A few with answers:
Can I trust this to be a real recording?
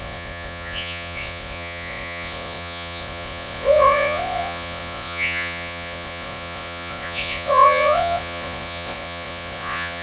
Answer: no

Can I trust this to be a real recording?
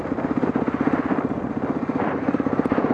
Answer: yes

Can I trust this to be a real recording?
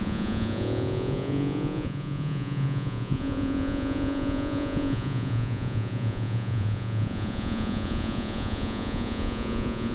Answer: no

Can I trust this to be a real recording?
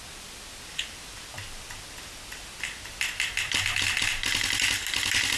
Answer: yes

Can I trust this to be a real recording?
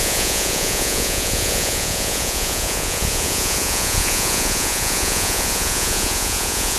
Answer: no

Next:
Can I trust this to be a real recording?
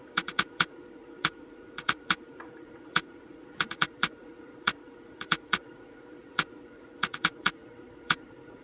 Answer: no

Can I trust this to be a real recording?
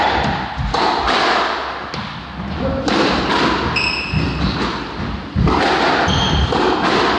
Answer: yes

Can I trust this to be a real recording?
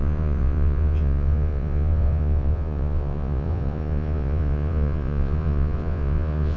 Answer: no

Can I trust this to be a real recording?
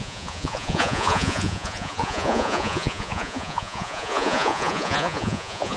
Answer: no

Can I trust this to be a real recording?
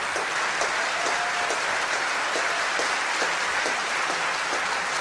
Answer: yes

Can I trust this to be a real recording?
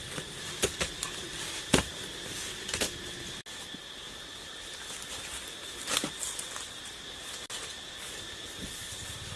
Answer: yes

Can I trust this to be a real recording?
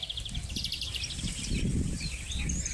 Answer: yes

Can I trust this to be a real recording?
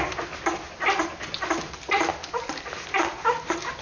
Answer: yes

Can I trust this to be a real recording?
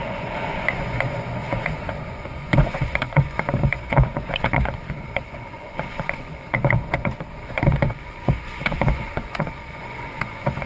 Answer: no